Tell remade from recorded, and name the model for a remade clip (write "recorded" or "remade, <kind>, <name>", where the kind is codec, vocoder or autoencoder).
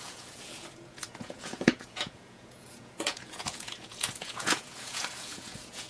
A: remade, vocoder, Vocos